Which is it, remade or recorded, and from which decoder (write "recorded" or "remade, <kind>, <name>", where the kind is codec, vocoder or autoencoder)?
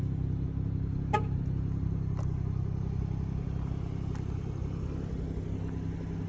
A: recorded